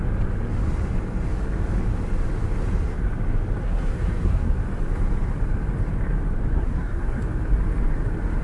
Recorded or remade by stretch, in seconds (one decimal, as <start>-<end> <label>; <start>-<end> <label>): 0.0-3.6 recorded; 3.6-4.6 remade; 4.6-6.5 recorded; 6.5-7.2 remade; 7.2-8.4 recorded